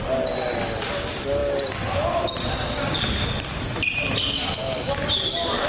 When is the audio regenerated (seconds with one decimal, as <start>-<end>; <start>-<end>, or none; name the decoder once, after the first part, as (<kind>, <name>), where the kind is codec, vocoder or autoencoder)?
none